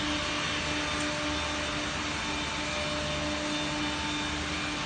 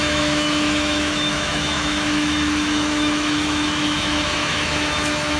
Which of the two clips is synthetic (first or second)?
second